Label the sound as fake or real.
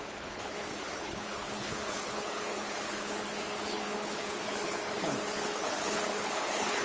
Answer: fake